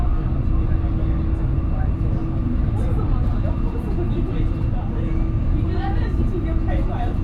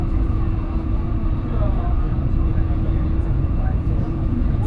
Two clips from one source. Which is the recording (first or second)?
first